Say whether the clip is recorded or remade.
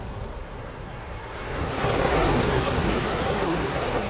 remade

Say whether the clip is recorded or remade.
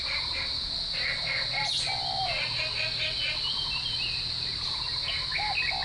recorded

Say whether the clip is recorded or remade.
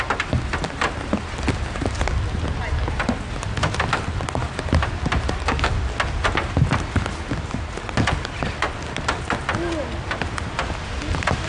recorded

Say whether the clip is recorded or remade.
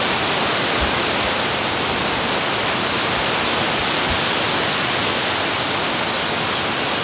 recorded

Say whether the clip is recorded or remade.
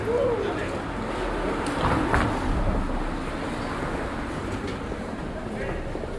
recorded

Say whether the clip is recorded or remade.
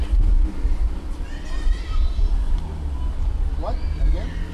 recorded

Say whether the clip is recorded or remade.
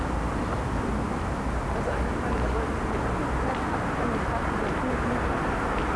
recorded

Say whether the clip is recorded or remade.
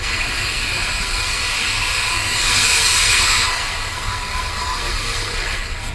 remade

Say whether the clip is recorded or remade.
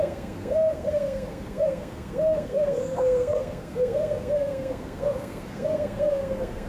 remade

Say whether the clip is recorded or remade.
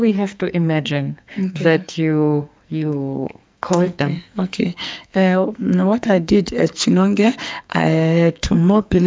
remade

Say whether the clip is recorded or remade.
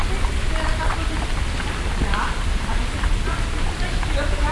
recorded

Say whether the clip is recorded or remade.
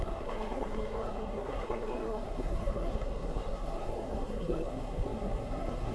remade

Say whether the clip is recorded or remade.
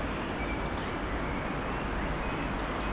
recorded